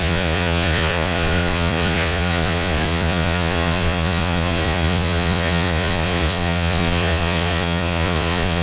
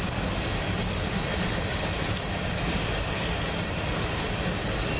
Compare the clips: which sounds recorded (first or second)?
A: second